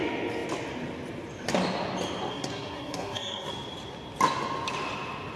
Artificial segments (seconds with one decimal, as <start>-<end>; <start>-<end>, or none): 2.3-3.5